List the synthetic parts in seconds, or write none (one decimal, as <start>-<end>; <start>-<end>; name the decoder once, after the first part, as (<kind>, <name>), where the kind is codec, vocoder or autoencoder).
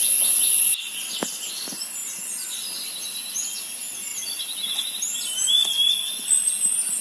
2.0-2.7 (vocoder, BigVGAN v2)